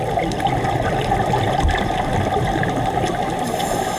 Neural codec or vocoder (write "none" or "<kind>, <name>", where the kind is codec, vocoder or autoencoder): none